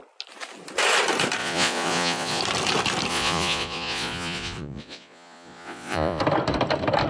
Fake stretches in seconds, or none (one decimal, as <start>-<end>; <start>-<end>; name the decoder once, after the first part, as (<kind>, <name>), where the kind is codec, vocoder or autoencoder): 1.4-2.4 (vocoder, Vocos); 3.1-6.2